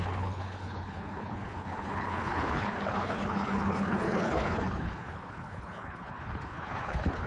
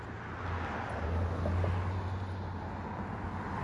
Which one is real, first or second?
second